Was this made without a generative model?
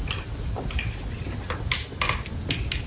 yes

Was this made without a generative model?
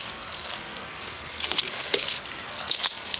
no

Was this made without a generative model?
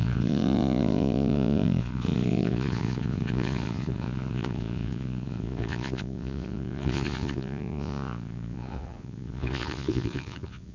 no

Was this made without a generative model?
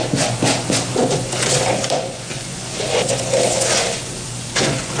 no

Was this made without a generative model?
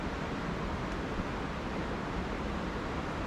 yes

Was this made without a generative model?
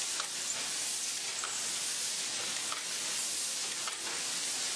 yes